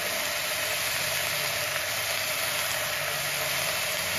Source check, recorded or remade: recorded